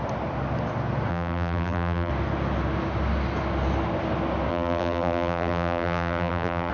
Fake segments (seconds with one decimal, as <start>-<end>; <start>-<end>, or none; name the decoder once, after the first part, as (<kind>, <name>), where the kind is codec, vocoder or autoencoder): 1.1-2.1 (vocoder, BigVGAN v2); 4.5-6.7